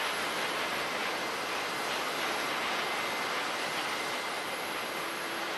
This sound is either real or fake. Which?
real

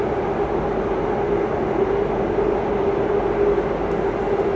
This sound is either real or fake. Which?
real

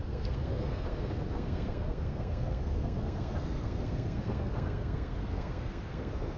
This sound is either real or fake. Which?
fake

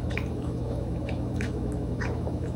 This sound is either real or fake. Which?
fake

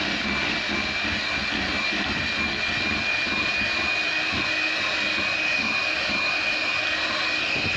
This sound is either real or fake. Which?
real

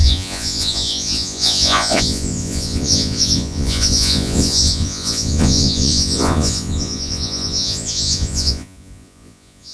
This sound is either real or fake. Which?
fake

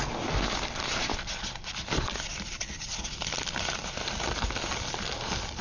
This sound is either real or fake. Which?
real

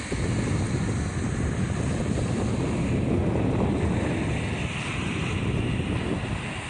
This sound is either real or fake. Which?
real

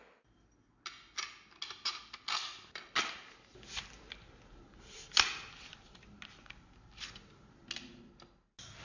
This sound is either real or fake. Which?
real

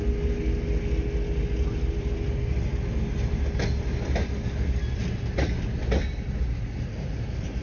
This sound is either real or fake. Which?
real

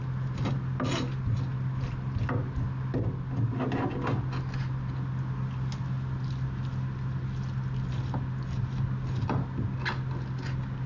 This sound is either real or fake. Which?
real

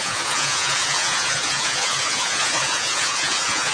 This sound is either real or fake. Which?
fake